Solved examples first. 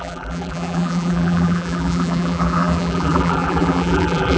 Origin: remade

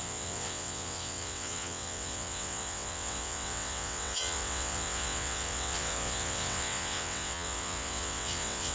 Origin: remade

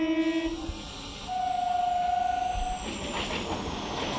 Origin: recorded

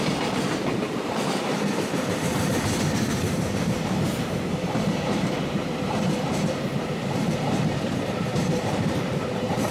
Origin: remade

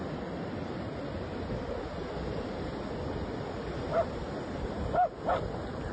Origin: recorded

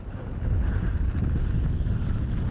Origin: recorded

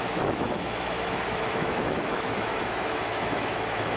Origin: remade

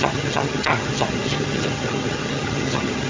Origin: remade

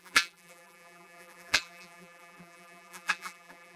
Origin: remade